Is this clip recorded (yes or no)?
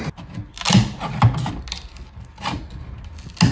yes